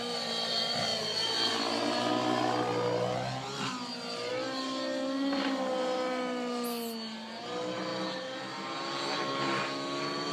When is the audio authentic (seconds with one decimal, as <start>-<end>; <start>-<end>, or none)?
0.0-10.3